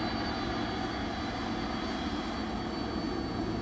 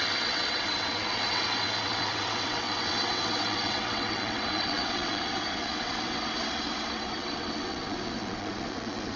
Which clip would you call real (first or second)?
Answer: first